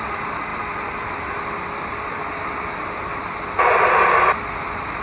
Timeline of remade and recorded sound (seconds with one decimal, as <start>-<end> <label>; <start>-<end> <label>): 0.0-5.0 recorded